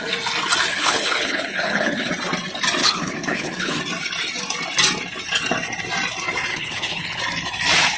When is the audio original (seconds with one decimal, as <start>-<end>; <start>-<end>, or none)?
0.0-0.7; 2.1-2.8; 3.8-6.5; 7.2-8.0